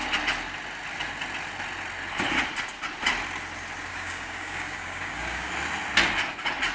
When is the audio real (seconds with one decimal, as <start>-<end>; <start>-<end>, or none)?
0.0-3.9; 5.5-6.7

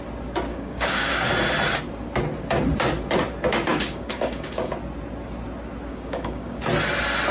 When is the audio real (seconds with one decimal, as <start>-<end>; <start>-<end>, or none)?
0.0-0.5; 1.3-3.7; 4.7-5.9; 6.6-7.3

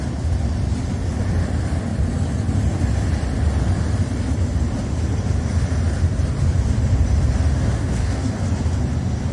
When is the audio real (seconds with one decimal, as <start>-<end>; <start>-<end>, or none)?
0.0-7.6; 8.3-9.3

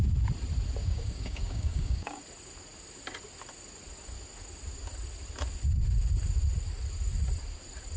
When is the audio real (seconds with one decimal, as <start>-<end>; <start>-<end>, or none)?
0.0-0.8; 2.2-8.0

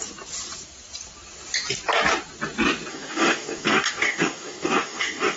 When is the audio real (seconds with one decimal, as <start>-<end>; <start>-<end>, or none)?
0.0-2.9